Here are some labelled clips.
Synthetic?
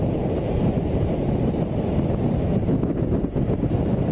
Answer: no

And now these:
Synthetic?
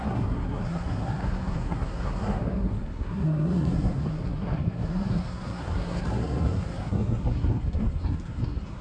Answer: yes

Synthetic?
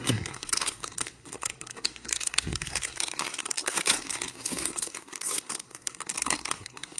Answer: yes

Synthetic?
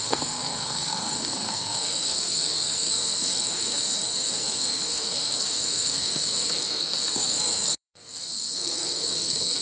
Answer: yes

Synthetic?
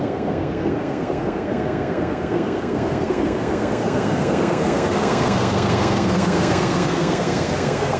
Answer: yes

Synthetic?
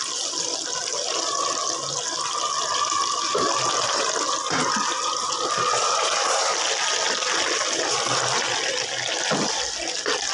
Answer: no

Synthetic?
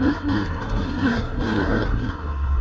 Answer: yes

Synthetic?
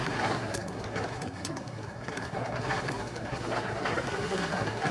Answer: yes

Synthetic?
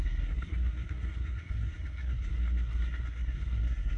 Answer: yes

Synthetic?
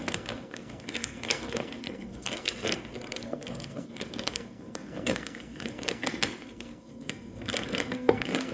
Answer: yes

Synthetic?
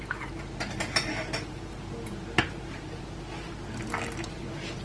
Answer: no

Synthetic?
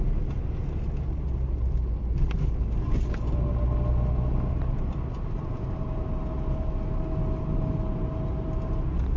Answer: no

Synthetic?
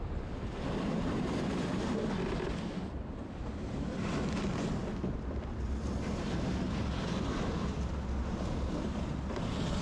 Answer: no